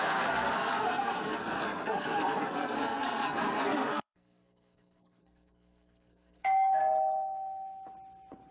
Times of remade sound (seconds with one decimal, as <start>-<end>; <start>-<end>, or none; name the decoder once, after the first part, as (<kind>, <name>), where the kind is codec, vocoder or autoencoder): 0.0-6.8 (codec, SNAC)